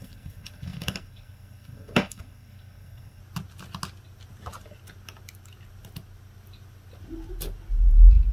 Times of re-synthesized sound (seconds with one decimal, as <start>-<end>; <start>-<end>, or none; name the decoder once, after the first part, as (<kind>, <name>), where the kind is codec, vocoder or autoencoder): 0.0-3.2 (codec, SNAC)

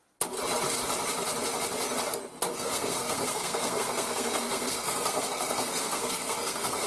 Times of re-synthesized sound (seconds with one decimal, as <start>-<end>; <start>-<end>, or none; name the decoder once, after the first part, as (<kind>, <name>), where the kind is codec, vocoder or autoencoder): 2.5-6.9 (codec, SNAC)

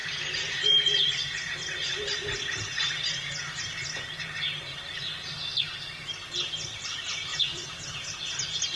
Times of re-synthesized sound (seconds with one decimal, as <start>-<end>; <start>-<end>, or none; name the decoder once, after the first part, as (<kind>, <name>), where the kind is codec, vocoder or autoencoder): 7.3-8.1 (vocoder, BigVGAN v2)

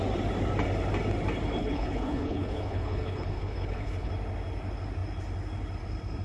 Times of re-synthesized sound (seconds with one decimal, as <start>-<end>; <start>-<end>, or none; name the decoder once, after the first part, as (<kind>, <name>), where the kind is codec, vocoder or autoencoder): 1.6-4.1 (codec, HILCodec)

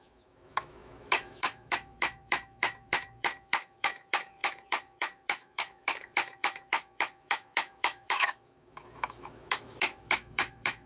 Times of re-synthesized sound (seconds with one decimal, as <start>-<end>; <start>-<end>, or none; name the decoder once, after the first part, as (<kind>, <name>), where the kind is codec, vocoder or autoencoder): 0.0-10.9 (autoencoder, DAC-VAE)

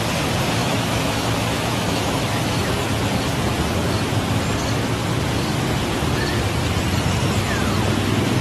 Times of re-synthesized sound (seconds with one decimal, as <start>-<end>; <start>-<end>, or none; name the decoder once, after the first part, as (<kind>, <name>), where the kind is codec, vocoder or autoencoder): 0.6-2.8 (autoencoder, DAC-VAE)

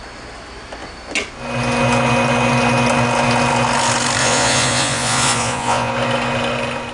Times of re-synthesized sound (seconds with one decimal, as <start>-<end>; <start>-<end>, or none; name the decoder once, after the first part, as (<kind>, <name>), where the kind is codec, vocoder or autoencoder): 4.2-5.9 (vocoder, Vocos)